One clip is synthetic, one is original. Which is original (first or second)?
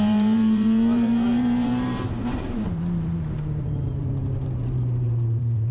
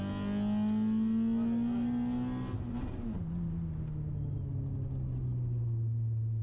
second